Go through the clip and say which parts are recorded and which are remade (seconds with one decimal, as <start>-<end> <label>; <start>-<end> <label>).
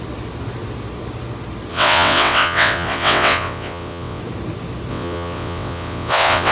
0.0-1.7 recorded; 1.7-4.2 remade; 4.2-4.9 recorded; 4.9-6.5 remade